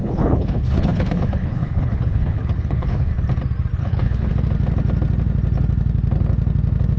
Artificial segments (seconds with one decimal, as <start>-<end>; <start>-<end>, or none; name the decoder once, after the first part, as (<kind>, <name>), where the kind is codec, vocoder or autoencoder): 0.0-3.1 (codec, HILCodec); 3.8-4.3